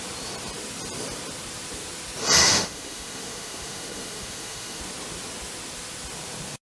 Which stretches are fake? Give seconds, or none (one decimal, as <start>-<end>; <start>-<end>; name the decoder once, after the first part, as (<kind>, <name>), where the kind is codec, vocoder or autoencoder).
2.4-4.8 (autoencoder, DAC-VAE)